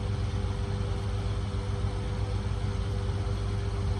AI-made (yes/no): no